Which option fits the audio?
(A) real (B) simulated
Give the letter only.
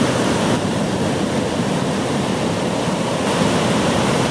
B